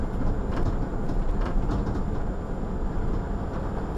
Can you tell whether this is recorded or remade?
recorded